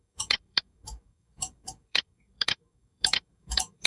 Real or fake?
fake